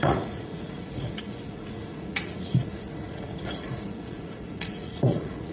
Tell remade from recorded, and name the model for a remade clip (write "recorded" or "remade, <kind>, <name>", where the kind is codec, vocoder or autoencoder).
remade, vocoder, Vocos